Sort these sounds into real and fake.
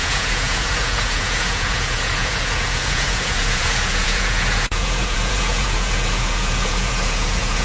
fake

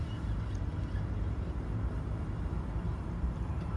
fake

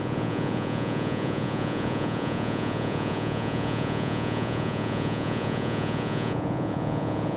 fake